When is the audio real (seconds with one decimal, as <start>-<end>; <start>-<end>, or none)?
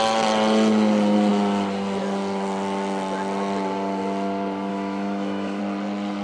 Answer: 0.0-4.7; 5.6-6.2